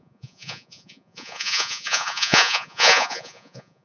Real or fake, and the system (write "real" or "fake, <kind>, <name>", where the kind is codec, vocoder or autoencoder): fake, vocoder, Vocos